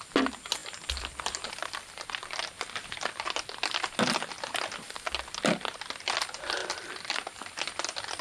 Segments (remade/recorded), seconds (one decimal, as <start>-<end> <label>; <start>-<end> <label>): 0.0-8.2 recorded